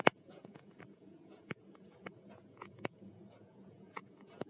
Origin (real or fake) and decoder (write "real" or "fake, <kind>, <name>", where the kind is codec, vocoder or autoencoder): fake, vocoder, Vocos